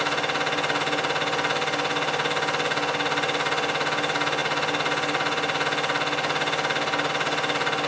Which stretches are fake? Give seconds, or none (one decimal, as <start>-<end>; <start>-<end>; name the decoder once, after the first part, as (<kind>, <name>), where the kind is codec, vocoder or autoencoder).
none